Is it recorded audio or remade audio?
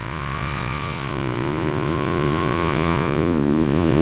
remade